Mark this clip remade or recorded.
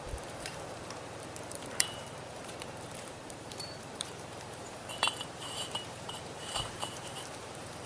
remade